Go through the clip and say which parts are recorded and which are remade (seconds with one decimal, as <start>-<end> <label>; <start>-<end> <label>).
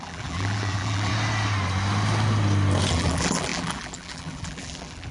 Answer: 0.0-1.1 remade; 1.1-2.9 recorded; 2.9-5.1 remade